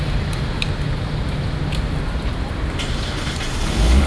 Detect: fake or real real